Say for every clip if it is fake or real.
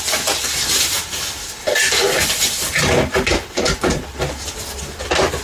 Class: real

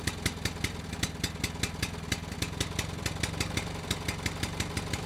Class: real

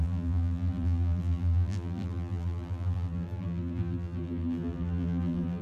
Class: fake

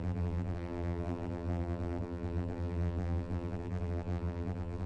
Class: fake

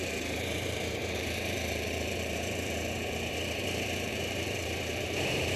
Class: fake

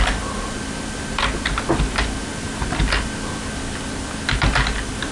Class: real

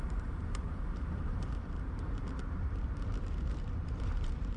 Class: fake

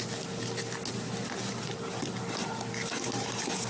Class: real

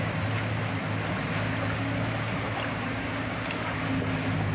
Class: real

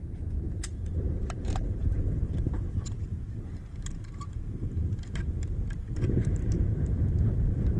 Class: fake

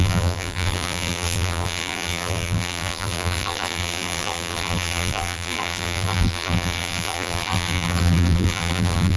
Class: fake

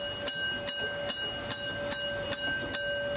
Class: real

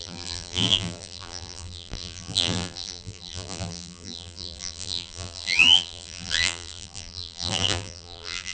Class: fake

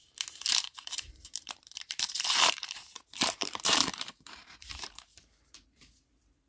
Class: fake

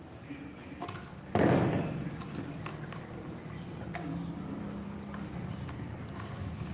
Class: fake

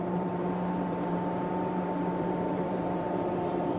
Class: fake